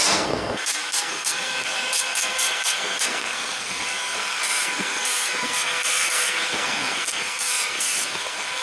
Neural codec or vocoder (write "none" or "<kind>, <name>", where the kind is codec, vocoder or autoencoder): codec, SNAC